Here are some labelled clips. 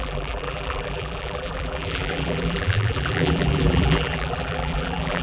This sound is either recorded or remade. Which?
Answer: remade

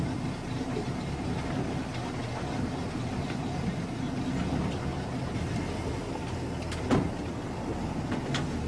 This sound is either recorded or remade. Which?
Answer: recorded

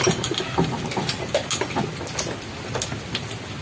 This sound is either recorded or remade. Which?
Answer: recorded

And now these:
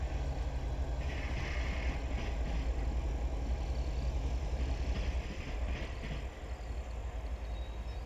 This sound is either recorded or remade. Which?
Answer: recorded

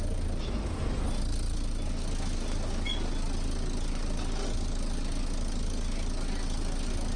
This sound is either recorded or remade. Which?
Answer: recorded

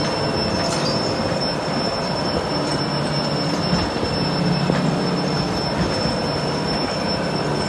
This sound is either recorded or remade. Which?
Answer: recorded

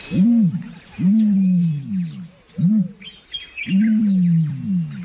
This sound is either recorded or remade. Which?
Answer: remade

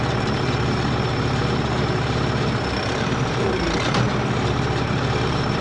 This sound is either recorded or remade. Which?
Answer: remade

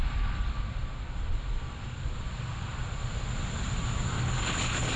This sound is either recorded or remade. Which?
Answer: recorded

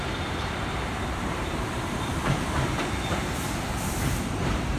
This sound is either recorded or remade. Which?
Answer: remade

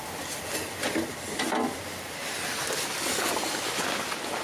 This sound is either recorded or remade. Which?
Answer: recorded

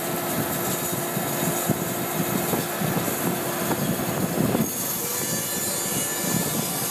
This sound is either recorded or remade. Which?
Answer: recorded